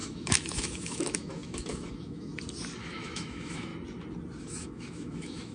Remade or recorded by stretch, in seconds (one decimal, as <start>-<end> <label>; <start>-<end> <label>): 0.0-2.3 remade; 2.3-2.8 recorded; 2.8-3.7 remade; 3.7-4.4 recorded; 4.4-5.5 remade